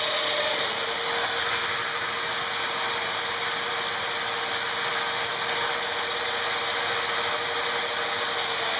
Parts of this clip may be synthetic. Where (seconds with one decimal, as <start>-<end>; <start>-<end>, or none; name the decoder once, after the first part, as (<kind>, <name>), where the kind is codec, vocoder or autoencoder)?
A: none